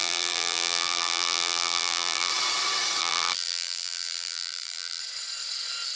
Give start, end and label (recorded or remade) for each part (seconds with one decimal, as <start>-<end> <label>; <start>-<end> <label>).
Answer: 0.0-2.3 remade; 2.3-3.0 recorded; 3.0-5.0 remade; 5.0-6.0 recorded